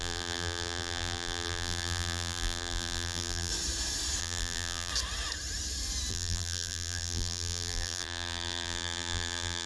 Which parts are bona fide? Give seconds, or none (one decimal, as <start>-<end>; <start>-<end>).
3.5-4.2; 4.9-6.1